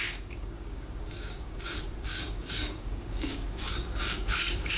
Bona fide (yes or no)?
no